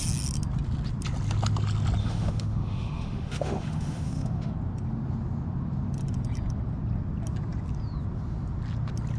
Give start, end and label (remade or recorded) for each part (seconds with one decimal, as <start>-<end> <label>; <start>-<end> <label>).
0.0-2.0 recorded; 2.0-4.5 remade; 4.5-9.2 recorded